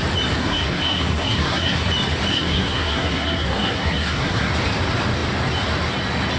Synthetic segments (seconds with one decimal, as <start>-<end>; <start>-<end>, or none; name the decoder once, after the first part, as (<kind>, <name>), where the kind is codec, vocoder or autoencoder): 0.4-1.9 (codec, SNAC); 2.3-4.5